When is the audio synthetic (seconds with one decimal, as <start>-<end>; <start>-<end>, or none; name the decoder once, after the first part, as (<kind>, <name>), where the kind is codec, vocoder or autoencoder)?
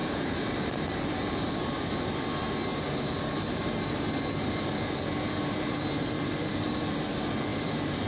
0.0-2.1 (vocoder, BigVGAN v2); 2.7-7.1; 7.5-8.1